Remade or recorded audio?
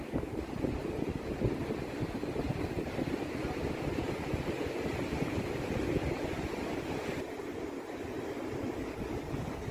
recorded